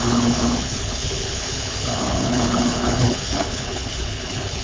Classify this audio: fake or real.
fake